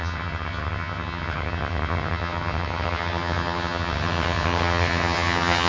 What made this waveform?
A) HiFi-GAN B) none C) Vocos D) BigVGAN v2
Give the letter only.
A